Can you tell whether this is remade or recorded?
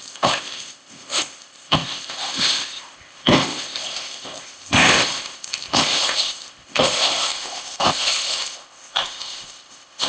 remade